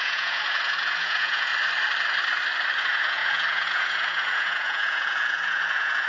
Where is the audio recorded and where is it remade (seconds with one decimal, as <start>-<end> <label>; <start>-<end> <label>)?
0.0-1.5 remade; 1.5-2.8 recorded; 2.8-6.1 remade